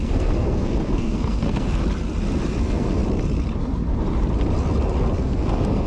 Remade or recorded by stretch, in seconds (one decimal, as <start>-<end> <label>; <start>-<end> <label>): 0.0-1.8 remade; 1.8-2.6 recorded; 2.6-3.0 remade; 3.0-5.2 recorded; 5.2-5.9 remade